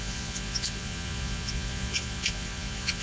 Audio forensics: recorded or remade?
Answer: remade